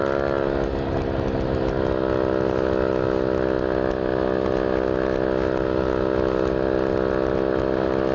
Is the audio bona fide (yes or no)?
yes